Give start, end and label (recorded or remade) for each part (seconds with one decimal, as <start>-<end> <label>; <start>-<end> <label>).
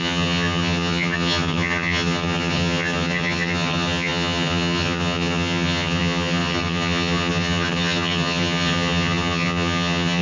0.0-10.2 remade